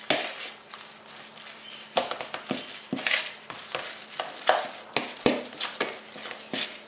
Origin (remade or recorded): recorded